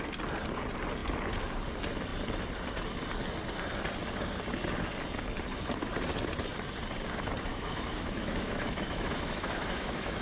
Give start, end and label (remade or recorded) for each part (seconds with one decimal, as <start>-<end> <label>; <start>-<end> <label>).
0.0-7.5 recorded; 7.5-10.2 remade